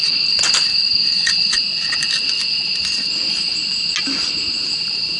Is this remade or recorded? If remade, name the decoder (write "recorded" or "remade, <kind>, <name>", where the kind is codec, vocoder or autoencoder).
recorded